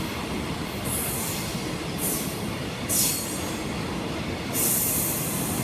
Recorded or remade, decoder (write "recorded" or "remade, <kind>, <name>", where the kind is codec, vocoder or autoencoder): recorded